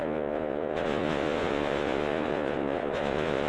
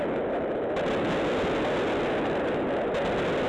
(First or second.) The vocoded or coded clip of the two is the first